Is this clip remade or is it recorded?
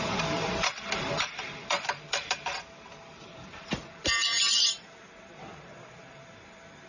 remade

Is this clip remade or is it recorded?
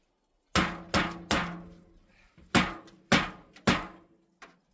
recorded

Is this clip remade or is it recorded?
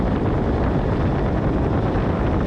remade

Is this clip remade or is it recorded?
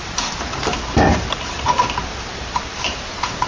remade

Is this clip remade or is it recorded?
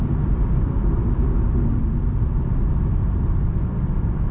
remade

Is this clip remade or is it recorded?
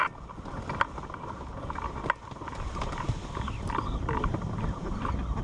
recorded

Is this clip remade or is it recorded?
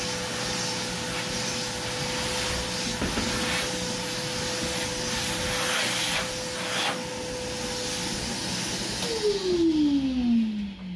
recorded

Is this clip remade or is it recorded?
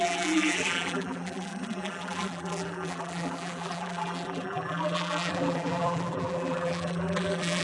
remade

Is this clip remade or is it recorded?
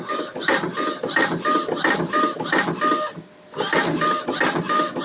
recorded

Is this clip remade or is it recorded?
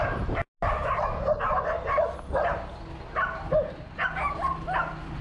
recorded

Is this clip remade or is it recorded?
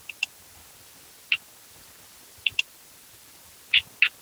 recorded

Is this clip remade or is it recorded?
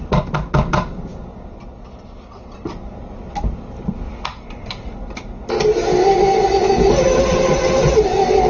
recorded